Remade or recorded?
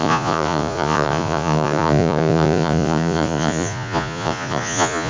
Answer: remade